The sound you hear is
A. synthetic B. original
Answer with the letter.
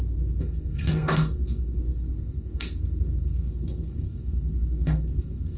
A